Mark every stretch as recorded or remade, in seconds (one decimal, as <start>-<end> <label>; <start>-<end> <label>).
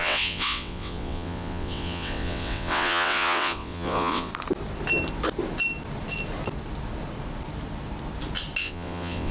0.0-4.3 remade; 4.3-8.6 recorded; 8.6-9.3 remade